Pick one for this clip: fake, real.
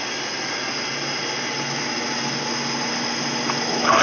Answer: real